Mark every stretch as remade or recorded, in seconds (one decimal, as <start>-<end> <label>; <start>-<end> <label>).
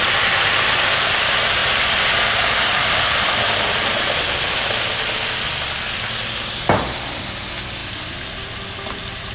0.0-1.6 recorded; 1.6-4.7 remade; 4.7-9.3 recorded